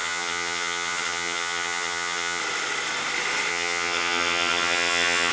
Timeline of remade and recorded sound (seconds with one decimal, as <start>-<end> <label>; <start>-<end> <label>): 0.0-2.4 remade; 2.4-3.5 recorded; 3.5-5.3 remade